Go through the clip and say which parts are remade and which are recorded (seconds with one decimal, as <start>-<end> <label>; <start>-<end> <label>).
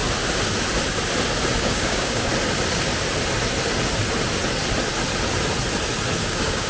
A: 0.0-1.6 recorded; 1.6-2.3 remade; 2.3-6.2 recorded; 6.2-6.7 remade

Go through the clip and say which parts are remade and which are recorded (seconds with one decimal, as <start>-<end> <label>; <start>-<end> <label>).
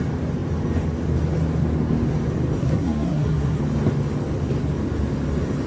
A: 0.0-2.6 recorded; 2.6-3.6 remade; 3.6-5.7 recorded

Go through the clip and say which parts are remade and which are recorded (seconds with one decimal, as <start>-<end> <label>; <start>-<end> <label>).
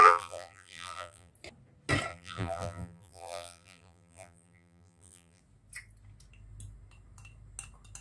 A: 0.0-1.3 remade; 1.3-2.1 recorded; 2.1-5.4 remade; 5.4-8.0 recorded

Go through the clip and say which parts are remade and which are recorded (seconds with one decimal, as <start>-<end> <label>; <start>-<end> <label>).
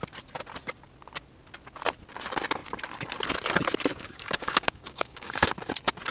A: 0.0-3.9 recorded; 3.9-5.5 remade; 5.5-6.1 recorded